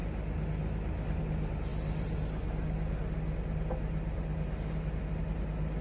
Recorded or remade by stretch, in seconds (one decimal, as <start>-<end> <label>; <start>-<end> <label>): 0.0-5.8 recorded